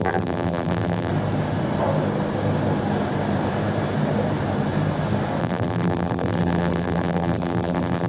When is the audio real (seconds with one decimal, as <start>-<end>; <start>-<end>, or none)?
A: 1.1-5.4